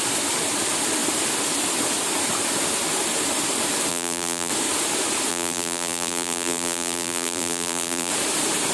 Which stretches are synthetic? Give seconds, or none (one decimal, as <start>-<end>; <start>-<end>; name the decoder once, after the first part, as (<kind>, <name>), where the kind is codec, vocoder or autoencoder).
3.9-4.5 (vocoder, BigVGAN v2); 5.3-8.1